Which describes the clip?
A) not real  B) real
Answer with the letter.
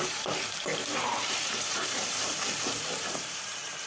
A